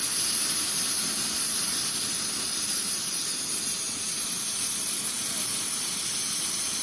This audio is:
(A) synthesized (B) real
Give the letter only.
B